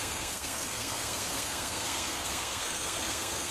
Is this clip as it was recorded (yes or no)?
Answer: no